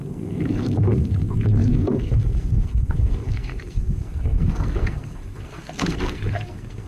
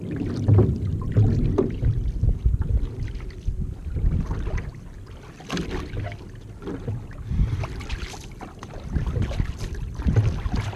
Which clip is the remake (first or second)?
first